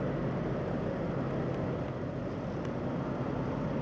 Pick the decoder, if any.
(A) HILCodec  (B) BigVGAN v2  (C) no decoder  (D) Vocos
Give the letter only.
C